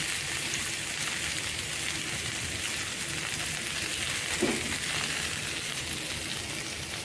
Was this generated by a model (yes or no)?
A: no